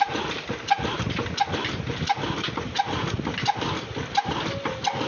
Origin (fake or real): real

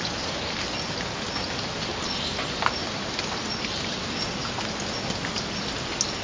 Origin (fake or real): real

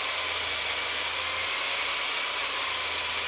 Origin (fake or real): real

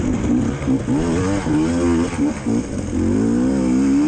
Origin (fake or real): real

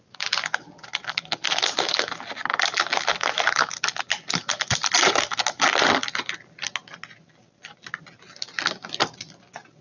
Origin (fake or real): real